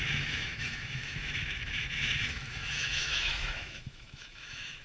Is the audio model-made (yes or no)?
yes